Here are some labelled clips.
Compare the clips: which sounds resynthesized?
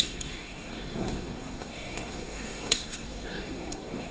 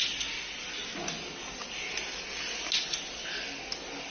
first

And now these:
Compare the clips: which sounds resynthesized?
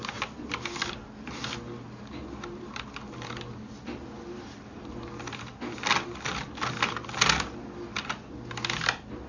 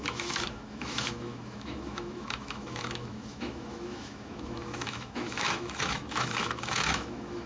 second